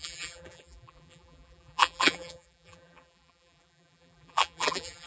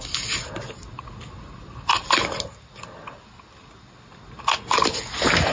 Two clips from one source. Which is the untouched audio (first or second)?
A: second